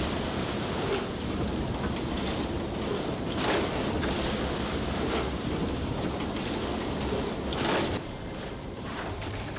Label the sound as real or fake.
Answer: fake